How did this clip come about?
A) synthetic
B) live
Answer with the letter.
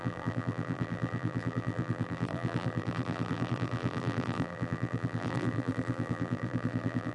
A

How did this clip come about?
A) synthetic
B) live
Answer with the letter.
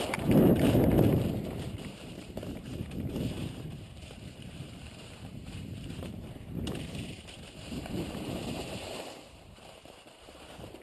A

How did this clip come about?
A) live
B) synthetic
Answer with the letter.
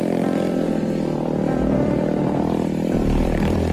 B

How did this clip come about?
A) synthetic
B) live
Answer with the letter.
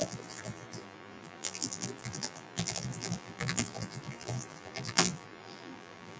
A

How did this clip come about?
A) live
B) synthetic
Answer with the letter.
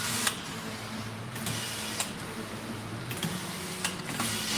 A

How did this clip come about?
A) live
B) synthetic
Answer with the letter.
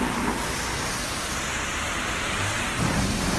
A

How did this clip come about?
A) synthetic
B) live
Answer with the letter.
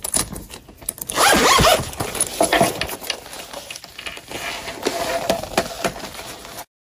B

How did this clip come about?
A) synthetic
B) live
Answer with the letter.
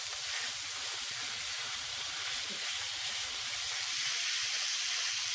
A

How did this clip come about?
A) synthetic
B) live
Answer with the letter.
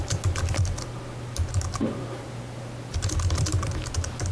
B